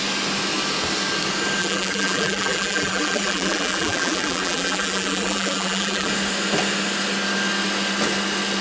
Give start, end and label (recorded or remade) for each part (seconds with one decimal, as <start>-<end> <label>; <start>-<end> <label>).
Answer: 0.0-1.6 recorded; 1.6-6.1 remade; 6.1-8.6 recorded